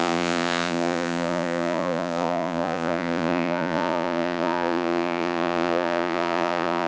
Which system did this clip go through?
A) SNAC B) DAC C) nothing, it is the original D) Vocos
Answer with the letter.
D